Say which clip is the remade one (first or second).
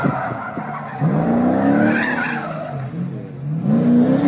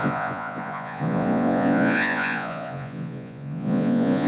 second